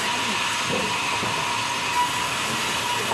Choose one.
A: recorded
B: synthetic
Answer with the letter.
A